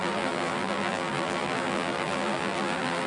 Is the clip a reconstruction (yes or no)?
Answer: yes